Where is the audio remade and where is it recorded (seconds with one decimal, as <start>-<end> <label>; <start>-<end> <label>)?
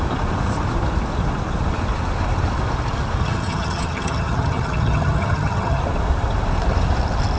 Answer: 0.0-3.2 recorded; 3.2-5.8 remade; 5.8-7.4 recorded